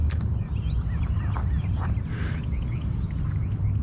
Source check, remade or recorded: recorded